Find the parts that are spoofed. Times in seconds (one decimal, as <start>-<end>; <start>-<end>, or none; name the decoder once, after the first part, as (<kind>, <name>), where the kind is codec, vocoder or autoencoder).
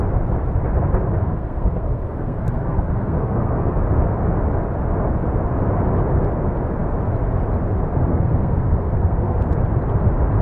1.2-3.8 (codec, SNAC); 8.1-9.4